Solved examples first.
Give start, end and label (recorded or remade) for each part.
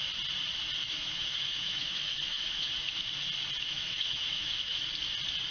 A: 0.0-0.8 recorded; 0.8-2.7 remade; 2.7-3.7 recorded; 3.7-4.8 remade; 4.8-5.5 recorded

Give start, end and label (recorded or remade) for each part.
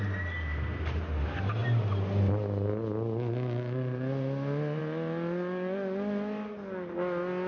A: 0.0-7.5 recorded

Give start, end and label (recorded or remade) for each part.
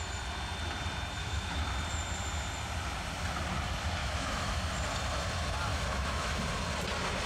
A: 0.0-1.2 recorded; 1.2-1.7 remade; 1.7-4.0 recorded; 4.0-4.6 remade; 4.6-5.7 recorded; 5.7-6.4 remade; 6.4-7.3 recorded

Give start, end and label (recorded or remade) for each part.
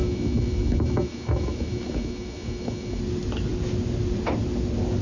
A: 0.0-3.0 remade; 3.0-5.0 recorded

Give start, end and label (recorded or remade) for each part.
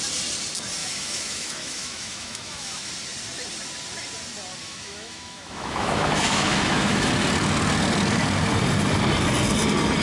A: 0.0-0.8 recorded; 0.8-2.9 remade; 2.9-4.6 recorded; 4.6-7.1 remade; 7.1-10.0 recorded